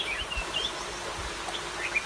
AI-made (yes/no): no